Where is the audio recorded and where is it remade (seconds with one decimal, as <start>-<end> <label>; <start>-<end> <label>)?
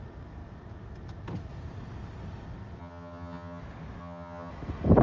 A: 0.0-2.8 recorded; 2.8-3.6 remade; 3.6-4.0 recorded; 4.0-4.5 remade; 4.5-5.0 recorded